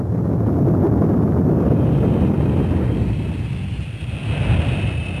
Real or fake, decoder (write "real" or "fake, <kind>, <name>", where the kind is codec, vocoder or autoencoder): real